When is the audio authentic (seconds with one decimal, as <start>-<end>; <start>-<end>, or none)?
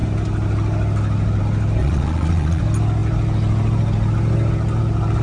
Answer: 0.0-1.8; 2.6-5.2